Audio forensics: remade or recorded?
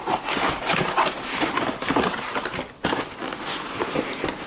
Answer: recorded